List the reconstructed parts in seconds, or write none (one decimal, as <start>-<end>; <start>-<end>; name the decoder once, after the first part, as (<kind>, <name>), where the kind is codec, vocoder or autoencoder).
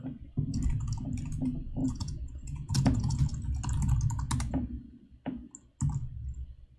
1.8-3.2 (vocoder, Vocos)